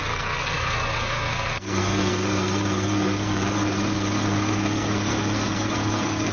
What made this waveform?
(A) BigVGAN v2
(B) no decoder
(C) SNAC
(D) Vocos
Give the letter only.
C